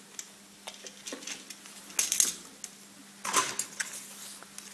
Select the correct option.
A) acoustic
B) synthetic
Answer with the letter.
A